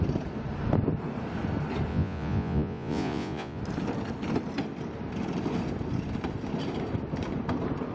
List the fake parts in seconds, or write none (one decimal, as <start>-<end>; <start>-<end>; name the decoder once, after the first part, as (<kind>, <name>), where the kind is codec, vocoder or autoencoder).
1.9-3.6 (vocoder, Vocos)